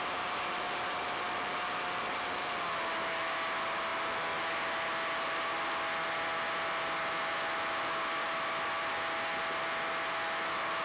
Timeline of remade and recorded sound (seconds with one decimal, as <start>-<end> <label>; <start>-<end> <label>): 0.0-10.8 recorded